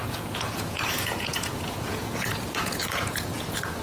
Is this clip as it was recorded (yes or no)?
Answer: no